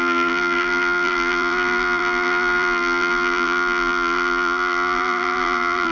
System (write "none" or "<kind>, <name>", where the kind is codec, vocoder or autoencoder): vocoder, BigVGAN v2